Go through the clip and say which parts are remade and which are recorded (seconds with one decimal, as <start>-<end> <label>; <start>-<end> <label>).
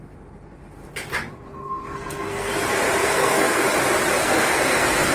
0.0-1.5 recorded; 1.5-2.5 remade; 2.5-3.0 recorded; 3.0-3.7 remade; 3.7-4.2 recorded; 4.2-5.1 remade